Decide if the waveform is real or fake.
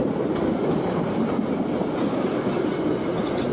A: real